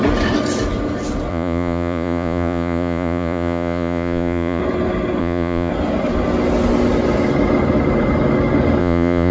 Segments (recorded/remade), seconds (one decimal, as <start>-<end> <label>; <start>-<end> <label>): 0.0-1.3 recorded; 1.3-4.6 remade; 4.6-5.2 recorded; 5.2-5.7 remade; 5.7-8.8 recorded; 8.8-9.3 remade